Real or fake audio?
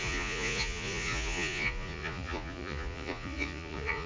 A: fake